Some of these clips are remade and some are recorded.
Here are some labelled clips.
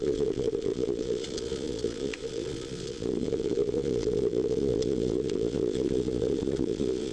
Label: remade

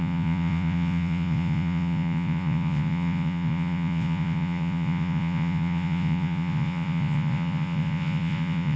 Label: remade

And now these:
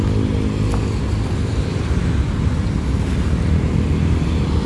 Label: recorded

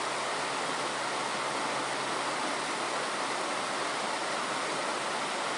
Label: recorded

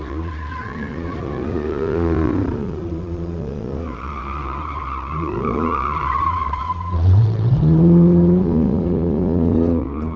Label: remade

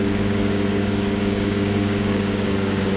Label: remade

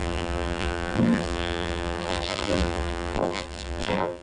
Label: remade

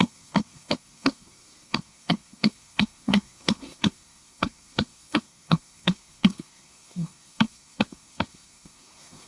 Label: remade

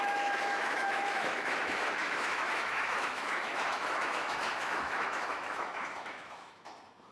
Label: remade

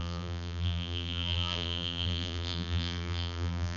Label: remade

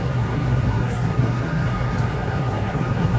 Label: remade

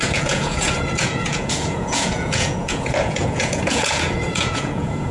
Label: remade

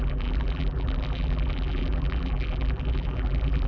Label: remade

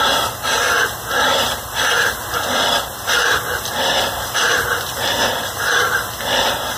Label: remade